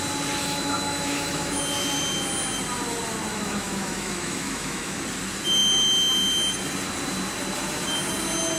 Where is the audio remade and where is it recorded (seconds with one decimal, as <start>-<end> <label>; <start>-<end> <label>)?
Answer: 0.0-0.4 recorded; 0.4-1.6 remade; 1.6-3.3 recorded; 3.3-5.0 remade; 5.0-8.6 recorded

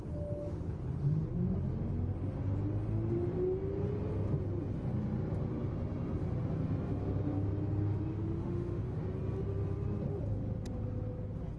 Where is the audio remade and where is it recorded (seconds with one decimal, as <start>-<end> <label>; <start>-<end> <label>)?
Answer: 0.0-8.1 recorded; 8.1-9.0 remade; 9.0-11.6 recorded